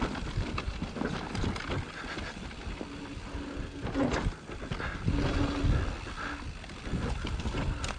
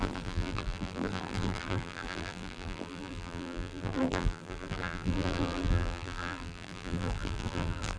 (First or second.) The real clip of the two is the first